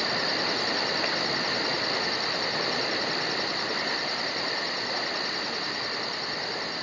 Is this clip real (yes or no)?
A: yes